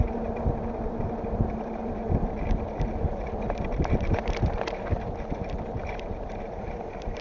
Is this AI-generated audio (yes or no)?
yes